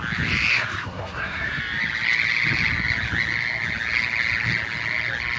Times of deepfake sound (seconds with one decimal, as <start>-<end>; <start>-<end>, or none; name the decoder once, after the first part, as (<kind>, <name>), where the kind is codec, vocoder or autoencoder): 0.5-1.6 (codec, SNAC)